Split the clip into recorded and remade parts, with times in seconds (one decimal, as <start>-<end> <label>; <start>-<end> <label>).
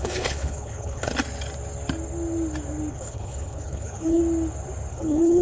0.0-1.1 remade; 1.1-2.9 recorded; 2.9-4.2 remade; 4.2-4.9 recorded; 4.9-5.4 remade